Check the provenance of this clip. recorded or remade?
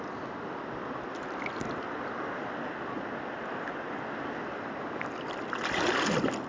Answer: recorded